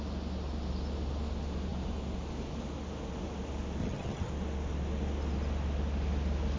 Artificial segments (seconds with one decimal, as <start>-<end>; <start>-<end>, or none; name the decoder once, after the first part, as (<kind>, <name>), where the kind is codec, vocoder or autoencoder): 3.8-4.3 (vocoder, HiFi-GAN)